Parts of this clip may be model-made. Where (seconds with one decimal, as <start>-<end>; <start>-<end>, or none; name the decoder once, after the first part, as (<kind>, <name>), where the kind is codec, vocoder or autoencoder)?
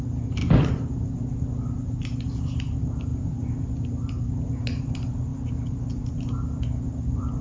none